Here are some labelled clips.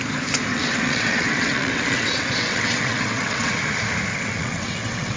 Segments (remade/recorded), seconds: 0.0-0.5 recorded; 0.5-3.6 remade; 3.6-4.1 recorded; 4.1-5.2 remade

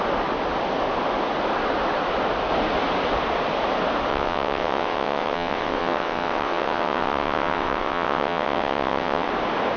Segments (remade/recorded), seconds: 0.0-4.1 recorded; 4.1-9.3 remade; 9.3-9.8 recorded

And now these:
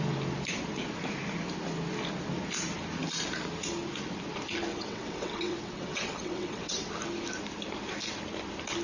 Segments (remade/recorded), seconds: 0.0-4.7 recorded; 4.7-6.9 remade; 6.9-8.8 recorded

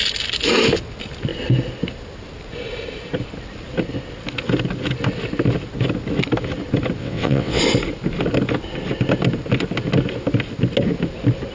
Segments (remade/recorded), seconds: 0.0-7.0 recorded; 7.0-7.6 remade; 7.6-11.5 recorded

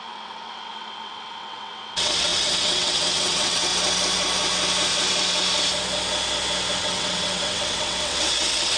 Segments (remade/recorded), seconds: 0.0-3.7 remade; 3.7-6.8 recorded; 6.8-8.8 remade